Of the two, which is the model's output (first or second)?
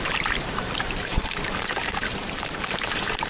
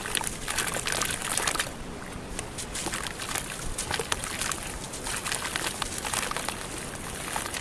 first